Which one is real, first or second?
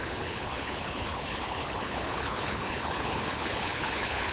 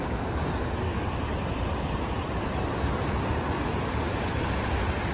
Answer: second